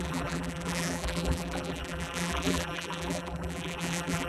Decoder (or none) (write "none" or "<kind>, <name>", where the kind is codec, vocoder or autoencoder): vocoder, BigVGAN v2